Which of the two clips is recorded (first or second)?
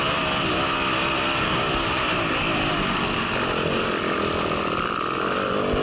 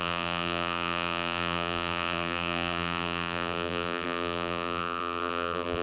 first